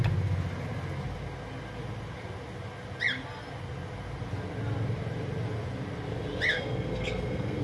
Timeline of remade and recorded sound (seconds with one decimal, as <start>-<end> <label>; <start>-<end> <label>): 0.0-6.5 recorded; 6.5-7.6 remade